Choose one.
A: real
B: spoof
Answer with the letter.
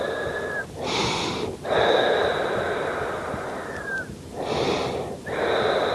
A